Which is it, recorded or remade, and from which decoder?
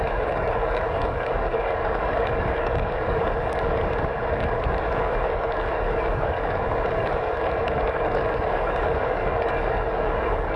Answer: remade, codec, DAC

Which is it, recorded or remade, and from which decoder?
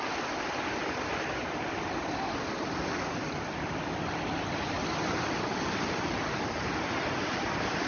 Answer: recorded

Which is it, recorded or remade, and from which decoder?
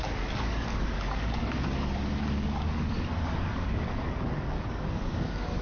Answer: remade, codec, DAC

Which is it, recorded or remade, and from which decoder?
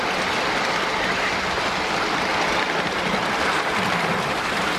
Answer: recorded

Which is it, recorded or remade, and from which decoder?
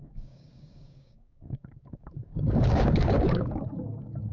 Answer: remade, codec, DAC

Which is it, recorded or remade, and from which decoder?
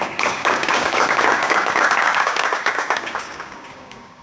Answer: remade, codec, DAC